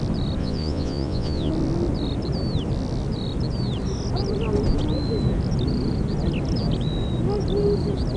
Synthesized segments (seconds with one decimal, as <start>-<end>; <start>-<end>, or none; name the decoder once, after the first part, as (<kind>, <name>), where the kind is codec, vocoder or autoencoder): 0.4-1.5 (vocoder, Vocos)